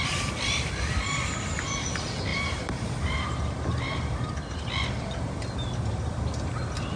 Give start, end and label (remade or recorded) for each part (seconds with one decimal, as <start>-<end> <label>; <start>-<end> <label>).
0.0-2.3 recorded; 2.3-3.9 remade; 3.9-7.0 recorded